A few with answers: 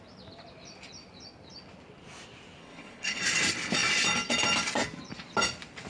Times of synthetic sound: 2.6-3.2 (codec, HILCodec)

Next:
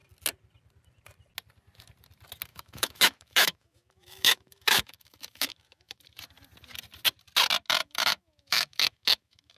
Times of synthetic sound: 2.5-6.0 (autoencoder, DAC-VAE); 7.8-9.6

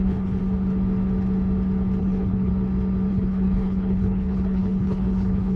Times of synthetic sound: 0.0-0.4 (codec, HILCodec); 2.0-2.5; 3.1-5.6

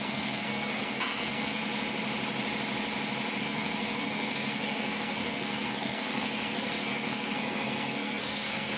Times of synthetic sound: 0.0-1.6 (codec, SNAC); 3.4-8.8

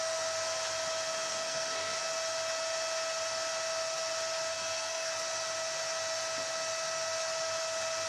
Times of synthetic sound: 1.3-2.0 (codec, SNAC); 4.5-5.1

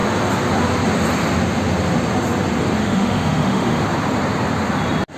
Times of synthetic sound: 2.8-3.8 (autoencoder, DAC-VAE)

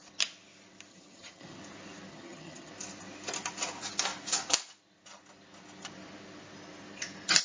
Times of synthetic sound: 0.9-1.6 (vocoder, HiFi-GAN); 2.1-2.7